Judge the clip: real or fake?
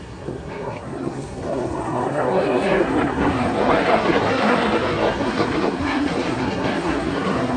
fake